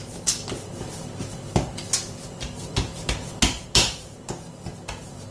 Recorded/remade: recorded